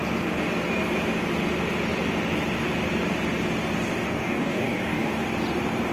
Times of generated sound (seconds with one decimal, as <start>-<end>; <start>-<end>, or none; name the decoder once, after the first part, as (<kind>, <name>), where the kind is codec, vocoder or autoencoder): 4.1-5.1 (codec, DAC)